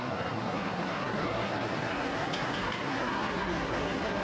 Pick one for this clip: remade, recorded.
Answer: remade